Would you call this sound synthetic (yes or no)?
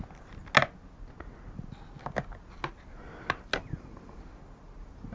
no